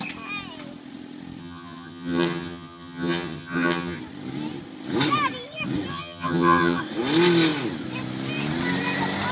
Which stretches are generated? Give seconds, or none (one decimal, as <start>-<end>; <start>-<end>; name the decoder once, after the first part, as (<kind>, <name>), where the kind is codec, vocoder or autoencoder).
1.4-4.0 (vocoder, HiFi-GAN); 5.9-6.8